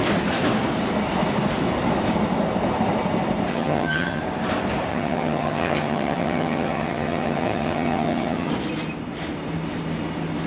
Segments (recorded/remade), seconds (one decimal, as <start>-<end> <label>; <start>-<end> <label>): 0.0-3.5 recorded; 3.5-4.2 remade; 4.2-4.9 recorded; 4.9-8.5 remade; 8.5-10.5 recorded